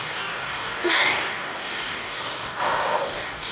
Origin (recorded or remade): remade